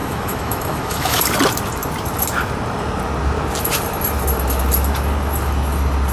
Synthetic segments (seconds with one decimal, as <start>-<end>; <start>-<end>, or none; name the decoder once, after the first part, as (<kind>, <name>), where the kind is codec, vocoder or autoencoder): 0.0-1.2 (autoencoder, DAC-VAE)